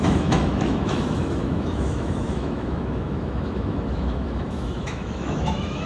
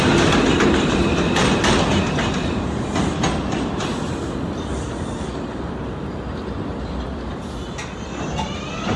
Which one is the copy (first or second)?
first